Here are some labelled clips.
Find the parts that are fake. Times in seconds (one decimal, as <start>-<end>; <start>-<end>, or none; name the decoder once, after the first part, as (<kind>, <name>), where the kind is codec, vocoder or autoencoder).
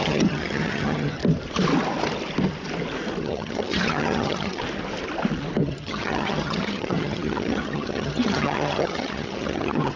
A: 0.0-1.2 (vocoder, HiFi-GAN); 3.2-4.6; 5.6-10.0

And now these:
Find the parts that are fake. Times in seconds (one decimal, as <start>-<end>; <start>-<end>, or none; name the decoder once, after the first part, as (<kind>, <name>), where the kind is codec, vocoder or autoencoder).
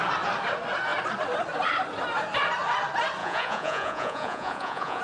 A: 3.2-5.0 (vocoder, Vocos)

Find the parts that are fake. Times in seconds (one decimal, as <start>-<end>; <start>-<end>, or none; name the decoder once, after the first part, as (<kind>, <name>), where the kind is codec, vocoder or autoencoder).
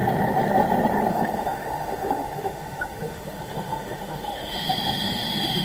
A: 1.1-5.6 (autoencoder, DAC-VAE)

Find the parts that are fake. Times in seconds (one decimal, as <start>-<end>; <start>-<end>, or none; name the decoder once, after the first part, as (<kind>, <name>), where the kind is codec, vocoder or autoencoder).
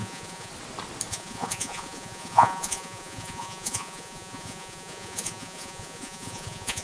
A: 0.0-0.5 (vocoder, Vocos); 1.1-6.8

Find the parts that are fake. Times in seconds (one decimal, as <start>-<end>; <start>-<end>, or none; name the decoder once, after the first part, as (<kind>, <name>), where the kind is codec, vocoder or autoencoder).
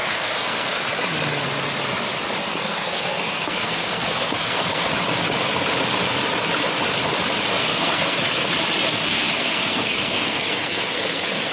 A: 0.0-0.8 (codec, SNAC); 2.4-4.9; 7.6-8.5; 8.9-11.5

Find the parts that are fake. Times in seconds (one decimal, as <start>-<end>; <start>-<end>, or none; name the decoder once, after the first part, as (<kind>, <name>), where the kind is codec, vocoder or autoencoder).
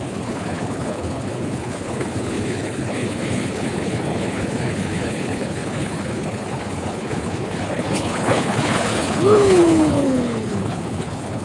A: 0.0-11.4 (codec, HILCodec)